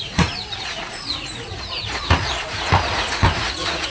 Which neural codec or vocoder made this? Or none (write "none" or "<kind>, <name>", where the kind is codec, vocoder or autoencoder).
vocoder, Vocos